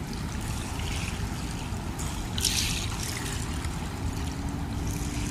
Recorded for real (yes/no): yes